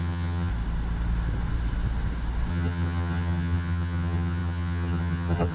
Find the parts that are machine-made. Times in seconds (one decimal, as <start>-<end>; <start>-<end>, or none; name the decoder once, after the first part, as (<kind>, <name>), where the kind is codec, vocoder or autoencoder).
0.0-0.5 (vocoder, HiFi-GAN); 2.5-5.5